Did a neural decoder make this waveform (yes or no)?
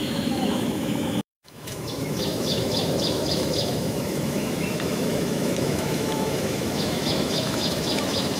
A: yes